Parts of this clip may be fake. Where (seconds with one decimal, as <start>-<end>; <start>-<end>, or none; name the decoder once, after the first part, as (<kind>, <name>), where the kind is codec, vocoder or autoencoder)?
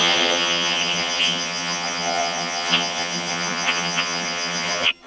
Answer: 0.0-5.1 (vocoder, HiFi-GAN)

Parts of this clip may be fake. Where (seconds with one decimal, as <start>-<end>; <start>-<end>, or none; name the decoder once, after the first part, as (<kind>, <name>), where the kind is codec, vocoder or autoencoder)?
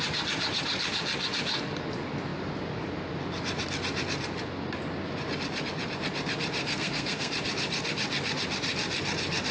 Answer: 6.6-7.3 (codec, SNAC)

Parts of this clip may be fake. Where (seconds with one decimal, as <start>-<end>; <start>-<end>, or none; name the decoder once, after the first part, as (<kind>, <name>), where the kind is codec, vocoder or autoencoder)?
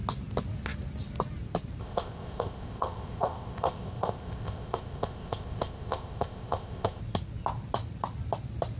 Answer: 1.8-7.0 (codec, ZipCodec)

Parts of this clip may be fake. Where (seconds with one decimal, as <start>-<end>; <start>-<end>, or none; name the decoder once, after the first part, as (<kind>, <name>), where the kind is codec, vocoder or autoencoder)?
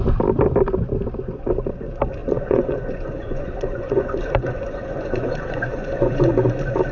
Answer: 2.2-6.3 (vocoder, Vocos)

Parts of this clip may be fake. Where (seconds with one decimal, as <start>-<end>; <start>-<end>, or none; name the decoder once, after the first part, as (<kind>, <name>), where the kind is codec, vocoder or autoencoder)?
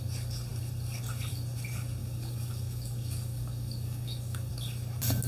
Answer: 2.0-4.5 (codec, DAC)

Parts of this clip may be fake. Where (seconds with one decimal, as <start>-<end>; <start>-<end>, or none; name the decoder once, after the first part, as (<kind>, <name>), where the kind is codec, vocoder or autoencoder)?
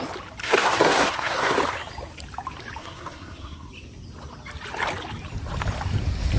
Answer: 0.4-1.6 (codec, SNAC); 2.8-3.7